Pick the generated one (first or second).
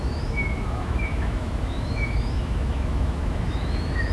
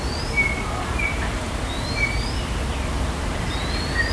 first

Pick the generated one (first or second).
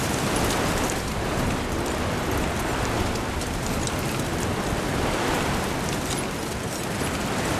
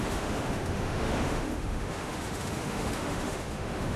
second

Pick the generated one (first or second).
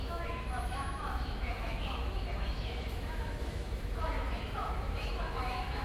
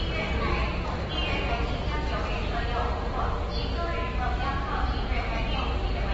first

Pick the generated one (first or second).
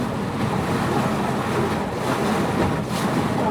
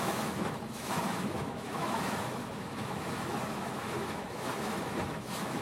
second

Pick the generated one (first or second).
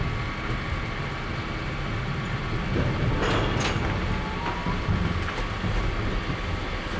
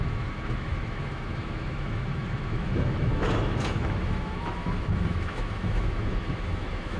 second